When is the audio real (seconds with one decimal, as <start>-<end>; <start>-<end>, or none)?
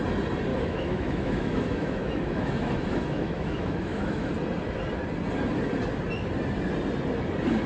0.0-0.5; 4.3-7.7